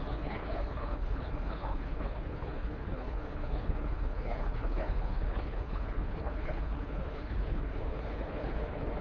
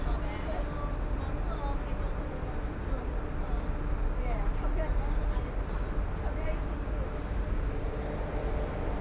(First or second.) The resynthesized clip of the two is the first